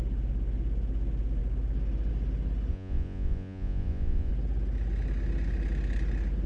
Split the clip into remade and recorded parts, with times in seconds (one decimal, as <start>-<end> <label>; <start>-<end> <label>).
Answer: 0.0-2.7 recorded; 2.7-4.3 remade; 4.3-6.5 recorded